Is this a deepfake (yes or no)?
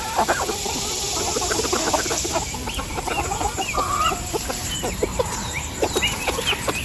yes